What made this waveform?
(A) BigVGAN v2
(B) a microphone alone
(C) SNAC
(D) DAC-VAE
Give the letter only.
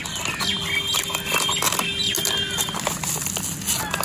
B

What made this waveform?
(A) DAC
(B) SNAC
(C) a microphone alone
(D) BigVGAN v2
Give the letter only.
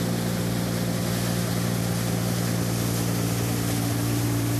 C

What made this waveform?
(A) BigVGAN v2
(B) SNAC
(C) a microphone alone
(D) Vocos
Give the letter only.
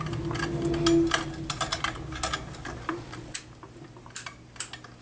C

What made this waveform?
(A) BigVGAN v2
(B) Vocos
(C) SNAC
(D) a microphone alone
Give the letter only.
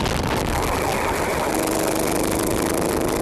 D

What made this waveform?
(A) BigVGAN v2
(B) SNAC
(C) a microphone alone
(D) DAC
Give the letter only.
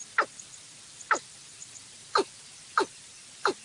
A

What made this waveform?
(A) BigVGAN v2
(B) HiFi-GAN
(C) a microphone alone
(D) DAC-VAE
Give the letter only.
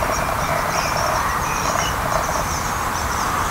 A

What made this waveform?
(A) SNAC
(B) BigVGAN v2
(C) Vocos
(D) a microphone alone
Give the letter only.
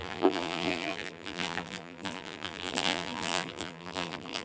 B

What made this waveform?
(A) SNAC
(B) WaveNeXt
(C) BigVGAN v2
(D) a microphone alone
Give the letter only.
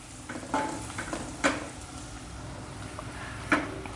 D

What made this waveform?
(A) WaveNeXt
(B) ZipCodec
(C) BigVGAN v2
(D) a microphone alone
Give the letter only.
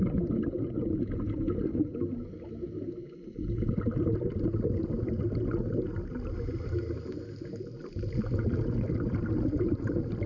D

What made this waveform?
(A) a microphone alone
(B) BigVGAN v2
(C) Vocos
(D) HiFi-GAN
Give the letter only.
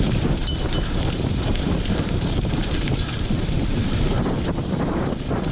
B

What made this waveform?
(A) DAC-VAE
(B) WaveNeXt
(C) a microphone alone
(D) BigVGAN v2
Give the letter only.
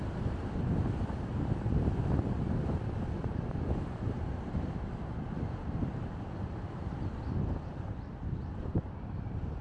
D